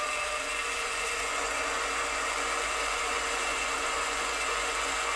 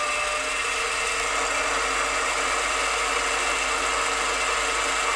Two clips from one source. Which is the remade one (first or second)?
first